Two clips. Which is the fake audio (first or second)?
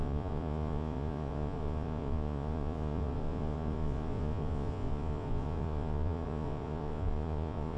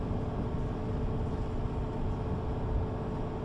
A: first